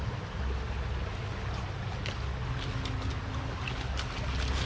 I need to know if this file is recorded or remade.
recorded